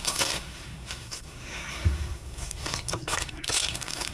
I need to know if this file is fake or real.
fake